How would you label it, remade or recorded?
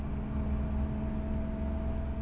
recorded